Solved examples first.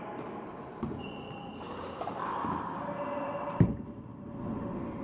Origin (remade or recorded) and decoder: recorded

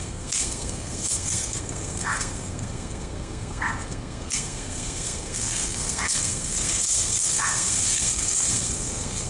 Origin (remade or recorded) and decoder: remade, codec, SNAC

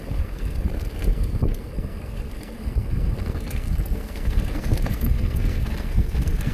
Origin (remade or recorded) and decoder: remade, codec, SNAC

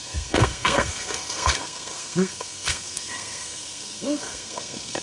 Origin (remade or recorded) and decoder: remade, codec, SNAC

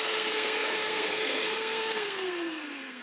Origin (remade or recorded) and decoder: remade, codec, SNAC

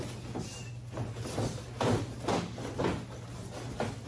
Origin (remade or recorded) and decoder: recorded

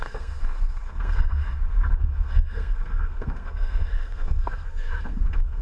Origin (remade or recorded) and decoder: remade, codec, SNAC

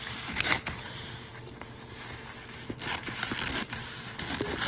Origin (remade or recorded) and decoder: recorded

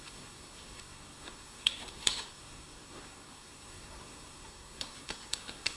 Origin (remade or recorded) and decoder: remade, codec, SNAC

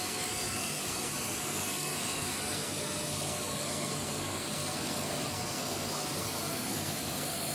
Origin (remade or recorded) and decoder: remade, codec, SNAC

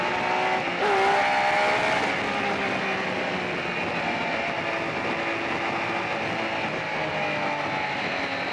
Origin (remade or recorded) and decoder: recorded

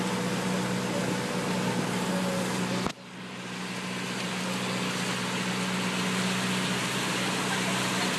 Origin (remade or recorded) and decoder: recorded